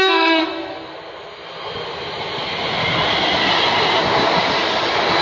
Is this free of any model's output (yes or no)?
yes